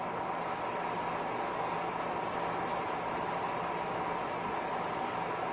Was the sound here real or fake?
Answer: real